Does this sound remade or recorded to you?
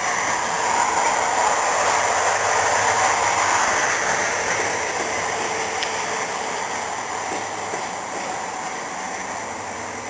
recorded